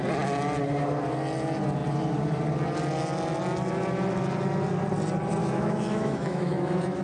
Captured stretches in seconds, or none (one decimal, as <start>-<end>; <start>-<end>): 0.0-5.4